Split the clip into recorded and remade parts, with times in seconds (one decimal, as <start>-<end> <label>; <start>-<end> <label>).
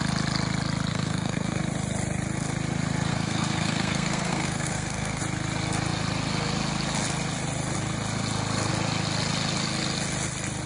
0.0-0.9 recorded; 0.9-1.6 remade; 1.6-3.1 recorded; 3.1-5.2 remade; 5.2-10.7 recorded